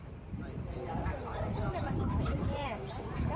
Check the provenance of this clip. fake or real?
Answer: fake